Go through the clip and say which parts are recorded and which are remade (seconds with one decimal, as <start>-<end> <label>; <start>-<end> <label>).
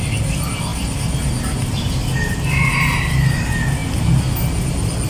0.0-5.1 recorded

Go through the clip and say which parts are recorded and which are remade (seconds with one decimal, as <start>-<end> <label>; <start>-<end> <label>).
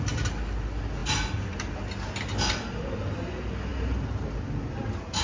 0.0-5.2 recorded